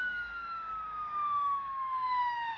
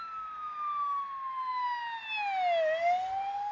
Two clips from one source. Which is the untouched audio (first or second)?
second